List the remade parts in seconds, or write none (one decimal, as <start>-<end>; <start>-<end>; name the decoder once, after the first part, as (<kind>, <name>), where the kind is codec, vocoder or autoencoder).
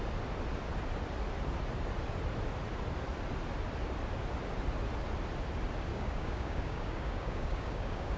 5.9-8.2 (codec, DAC)